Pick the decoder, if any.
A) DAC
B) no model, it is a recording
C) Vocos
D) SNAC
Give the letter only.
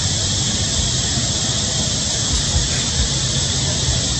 B